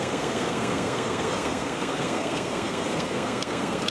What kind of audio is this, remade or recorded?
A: remade